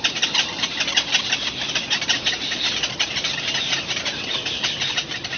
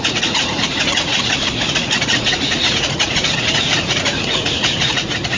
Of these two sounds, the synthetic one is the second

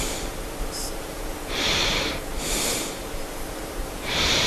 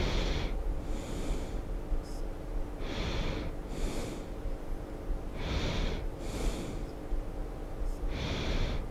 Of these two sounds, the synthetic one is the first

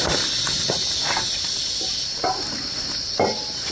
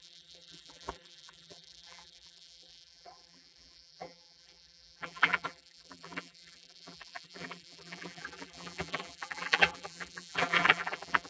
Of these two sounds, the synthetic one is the second